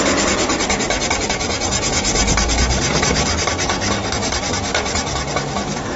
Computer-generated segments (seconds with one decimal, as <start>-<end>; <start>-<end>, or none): none